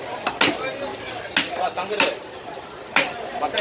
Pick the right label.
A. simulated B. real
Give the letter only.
B